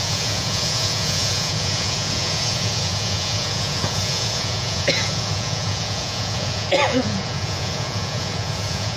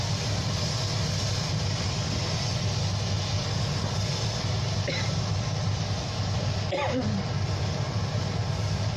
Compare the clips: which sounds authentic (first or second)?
second